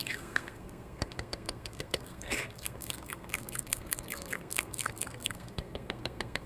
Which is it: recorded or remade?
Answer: remade